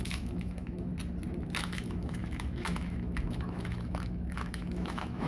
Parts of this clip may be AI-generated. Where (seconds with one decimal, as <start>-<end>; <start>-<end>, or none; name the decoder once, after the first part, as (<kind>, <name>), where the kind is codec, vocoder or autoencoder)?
0.0-0.9 (autoencoder, DAC-VAE); 1.6-5.3